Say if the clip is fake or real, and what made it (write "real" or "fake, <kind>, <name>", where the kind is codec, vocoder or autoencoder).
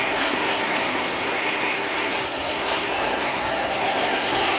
fake, codec, SNAC